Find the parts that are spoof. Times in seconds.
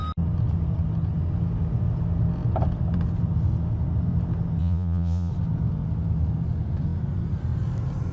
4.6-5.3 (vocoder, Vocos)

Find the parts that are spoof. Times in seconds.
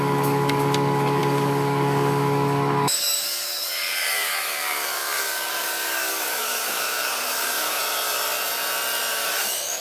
0.0-7.8 (codec, DAC); 9.1-9.8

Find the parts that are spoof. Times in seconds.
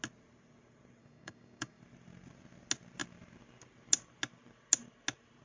1.0-1.8 (codec, DAC)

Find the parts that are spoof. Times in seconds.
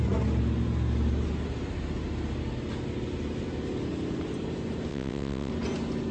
4.9-5.5 (vocoder, WaveNeXt)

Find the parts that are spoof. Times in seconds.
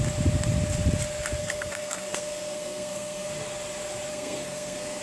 1.4-3.3 (codec, SNAC); 4.1-5.0